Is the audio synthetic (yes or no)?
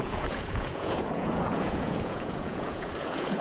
yes